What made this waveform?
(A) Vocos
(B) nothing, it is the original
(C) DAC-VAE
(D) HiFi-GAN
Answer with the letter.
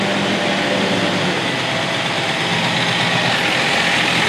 B